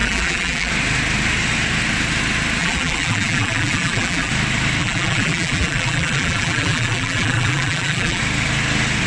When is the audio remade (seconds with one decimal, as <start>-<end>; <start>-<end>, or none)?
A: 0.0-0.7; 2.6-4.3; 4.8-8.2

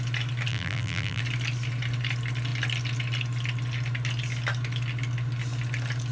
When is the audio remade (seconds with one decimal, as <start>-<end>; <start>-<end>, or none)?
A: 0.5-1.2

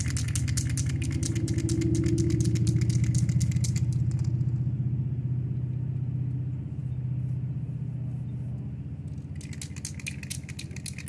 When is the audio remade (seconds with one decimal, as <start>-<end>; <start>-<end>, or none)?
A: none

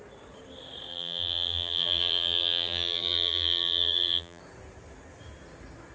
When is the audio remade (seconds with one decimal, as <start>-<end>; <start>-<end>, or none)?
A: 0.9-4.4

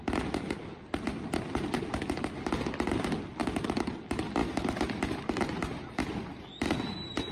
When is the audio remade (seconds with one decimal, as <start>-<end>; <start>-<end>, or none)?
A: 3.4-4.0; 4.4-6.4